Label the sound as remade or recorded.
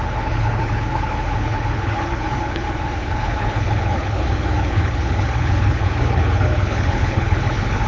remade